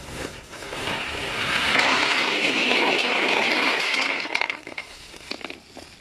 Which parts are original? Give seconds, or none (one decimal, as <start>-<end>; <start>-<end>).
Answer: 5.3-6.0